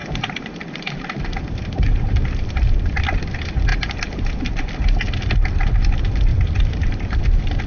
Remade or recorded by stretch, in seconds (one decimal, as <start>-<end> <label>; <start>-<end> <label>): 0.0-3.0 remade; 3.0-3.7 recorded; 3.7-4.7 remade; 4.7-6.3 recorded; 6.3-7.2 remade; 7.2-7.7 recorded